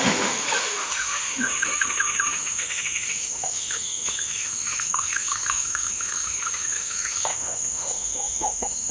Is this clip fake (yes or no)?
yes